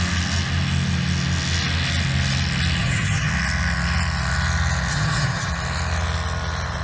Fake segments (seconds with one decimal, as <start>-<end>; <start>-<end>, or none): 2.8-3.3; 4.9-5.5